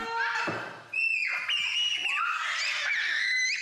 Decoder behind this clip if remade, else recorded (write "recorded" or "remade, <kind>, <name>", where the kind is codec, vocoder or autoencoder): recorded